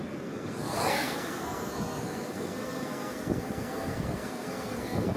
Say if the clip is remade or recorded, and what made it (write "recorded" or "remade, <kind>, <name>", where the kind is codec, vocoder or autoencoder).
remade, codec, SNAC